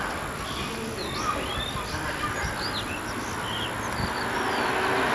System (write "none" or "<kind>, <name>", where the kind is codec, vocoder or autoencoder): none